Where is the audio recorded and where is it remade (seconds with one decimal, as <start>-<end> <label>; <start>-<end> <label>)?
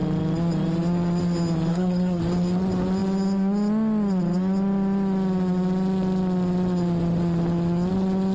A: 0.0-1.7 recorded; 1.7-2.2 remade; 2.2-8.3 recorded